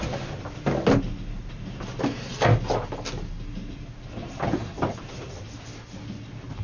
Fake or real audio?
real